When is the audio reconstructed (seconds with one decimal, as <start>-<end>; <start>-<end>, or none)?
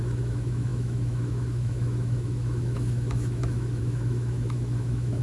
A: 0.0-5.2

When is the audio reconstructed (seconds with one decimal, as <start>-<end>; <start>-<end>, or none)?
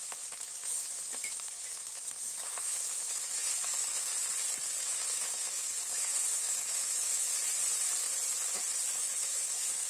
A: 0.0-4.1; 4.8-7.3; 8.9-9.9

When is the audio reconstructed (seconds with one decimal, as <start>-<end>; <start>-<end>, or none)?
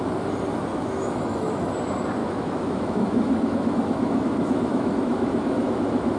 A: 0.7-1.7; 2.2-6.2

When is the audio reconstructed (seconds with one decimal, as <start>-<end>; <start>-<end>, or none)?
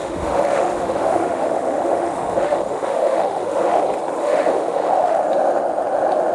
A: 0.0-3.8; 4.2-5.2